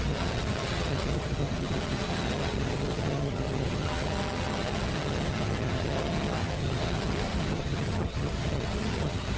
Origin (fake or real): fake